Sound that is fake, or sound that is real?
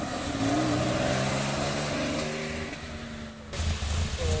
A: real